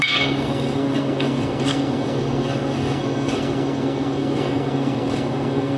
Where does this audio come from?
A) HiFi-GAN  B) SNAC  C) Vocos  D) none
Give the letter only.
B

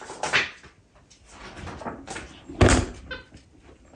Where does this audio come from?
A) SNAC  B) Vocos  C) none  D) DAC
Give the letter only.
C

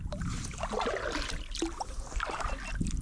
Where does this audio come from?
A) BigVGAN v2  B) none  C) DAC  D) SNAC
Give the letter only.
B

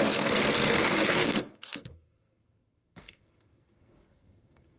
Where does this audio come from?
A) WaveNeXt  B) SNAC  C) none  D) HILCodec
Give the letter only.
B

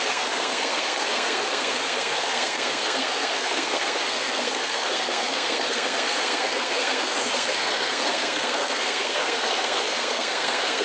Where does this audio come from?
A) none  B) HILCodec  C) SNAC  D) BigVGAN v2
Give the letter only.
C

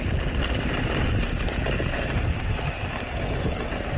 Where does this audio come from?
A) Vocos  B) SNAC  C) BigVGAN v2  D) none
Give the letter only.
D